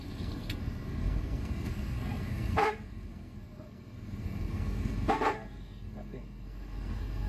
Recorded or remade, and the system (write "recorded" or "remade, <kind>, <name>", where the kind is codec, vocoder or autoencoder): remade, codec, SNAC